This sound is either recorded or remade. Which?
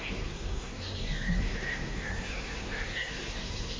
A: remade